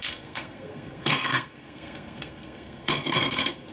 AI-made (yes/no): yes